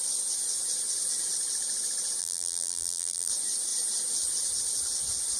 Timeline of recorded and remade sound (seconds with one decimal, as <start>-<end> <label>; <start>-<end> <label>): 0.0-2.2 recorded; 2.2-3.3 remade; 3.3-5.4 recorded